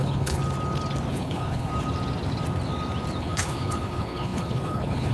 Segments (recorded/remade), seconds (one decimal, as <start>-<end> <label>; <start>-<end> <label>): 0.0-0.4 remade; 0.4-1.1 recorded; 1.1-1.7 remade; 1.7-3.2 recorded; 3.2-5.1 remade